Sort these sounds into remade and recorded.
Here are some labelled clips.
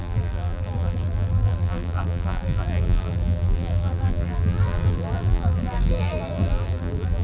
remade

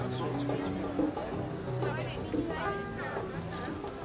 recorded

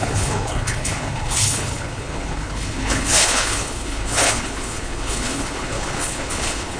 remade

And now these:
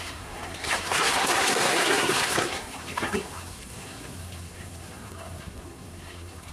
remade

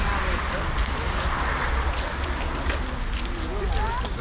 recorded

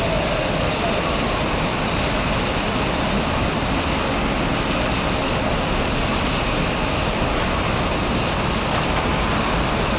recorded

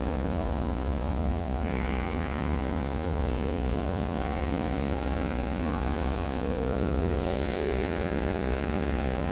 remade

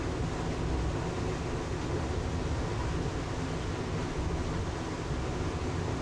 recorded